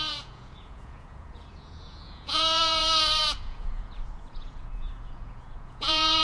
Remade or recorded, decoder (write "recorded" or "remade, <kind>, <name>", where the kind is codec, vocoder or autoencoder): remade, vocoder, Vocos